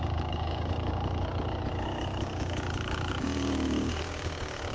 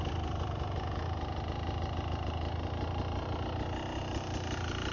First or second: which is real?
second